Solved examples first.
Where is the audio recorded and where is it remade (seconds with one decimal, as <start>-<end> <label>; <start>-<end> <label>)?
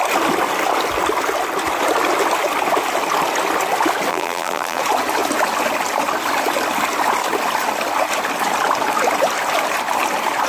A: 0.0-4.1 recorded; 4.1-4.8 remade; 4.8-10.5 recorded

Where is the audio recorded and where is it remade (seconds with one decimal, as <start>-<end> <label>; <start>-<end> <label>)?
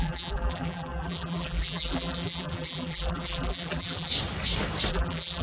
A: 0.0-4.1 remade; 4.1-4.9 recorded; 4.9-5.4 remade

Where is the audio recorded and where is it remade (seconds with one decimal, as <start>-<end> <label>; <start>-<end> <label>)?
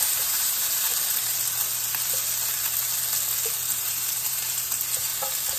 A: 0.0-0.9 remade; 0.9-3.8 recorded; 3.8-5.1 remade; 5.1-5.6 recorded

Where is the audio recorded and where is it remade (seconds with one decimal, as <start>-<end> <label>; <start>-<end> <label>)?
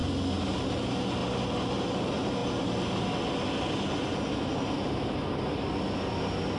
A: 0.0-0.5 recorded; 0.5-1.2 remade; 1.2-1.8 recorded; 1.8-2.4 remade; 2.4-6.6 recorded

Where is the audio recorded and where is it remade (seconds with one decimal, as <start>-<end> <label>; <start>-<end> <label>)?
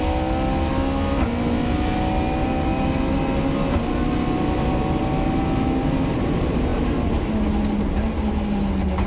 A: 0.0-6.7 recorded; 6.7-7.3 remade; 7.3-9.1 recorded